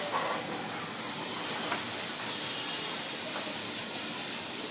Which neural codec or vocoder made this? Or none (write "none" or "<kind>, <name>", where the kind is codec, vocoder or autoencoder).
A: none